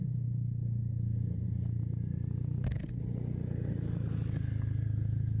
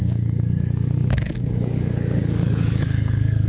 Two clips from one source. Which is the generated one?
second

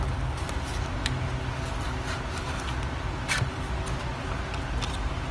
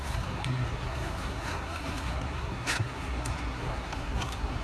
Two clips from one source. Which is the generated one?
second